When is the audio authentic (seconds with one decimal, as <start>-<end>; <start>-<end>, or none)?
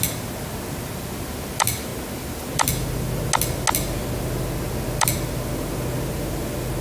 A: 0.0-6.8